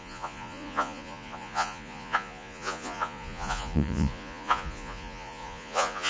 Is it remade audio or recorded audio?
remade